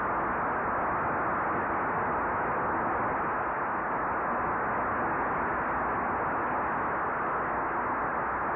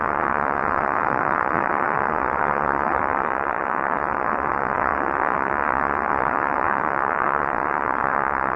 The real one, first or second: first